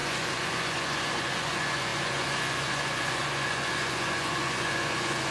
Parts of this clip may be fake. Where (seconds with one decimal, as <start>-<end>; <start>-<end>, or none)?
0.0-5.3